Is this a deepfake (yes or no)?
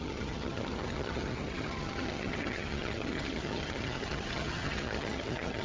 yes